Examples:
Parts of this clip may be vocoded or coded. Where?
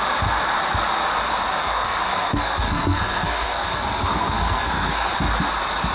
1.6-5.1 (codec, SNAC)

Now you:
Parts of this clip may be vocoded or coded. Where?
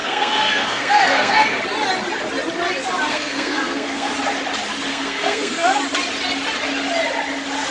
0.0-1.6 (codec, SNAC); 3.1-4.1; 4.9-5.8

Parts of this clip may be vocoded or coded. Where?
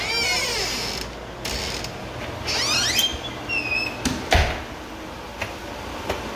none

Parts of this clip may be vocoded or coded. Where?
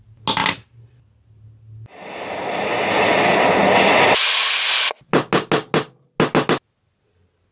none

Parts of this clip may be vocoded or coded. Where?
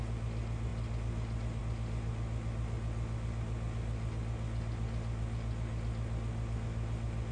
none